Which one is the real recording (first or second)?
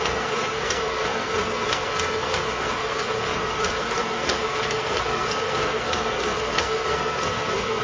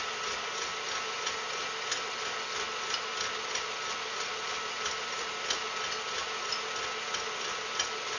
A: second